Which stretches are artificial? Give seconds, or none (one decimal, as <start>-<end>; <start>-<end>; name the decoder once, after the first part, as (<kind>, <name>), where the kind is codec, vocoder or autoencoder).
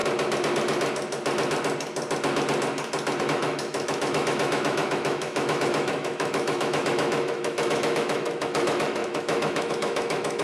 3.2-10.4 (autoencoder, DAC-VAE)